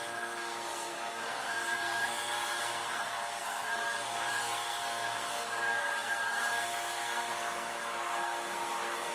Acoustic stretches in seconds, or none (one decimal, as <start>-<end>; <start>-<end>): none